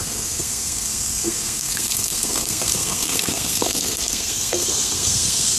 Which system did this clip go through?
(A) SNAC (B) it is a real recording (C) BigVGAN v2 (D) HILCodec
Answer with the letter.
A